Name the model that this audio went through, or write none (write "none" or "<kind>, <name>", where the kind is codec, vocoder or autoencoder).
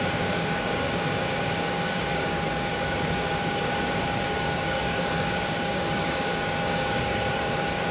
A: codec, DAC